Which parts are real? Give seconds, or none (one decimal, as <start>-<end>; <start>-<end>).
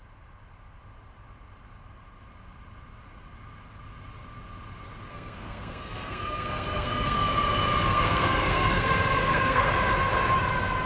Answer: 0.0-5.1; 7.3-7.9; 9.7-10.9